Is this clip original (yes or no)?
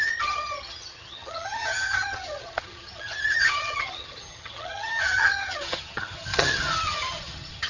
no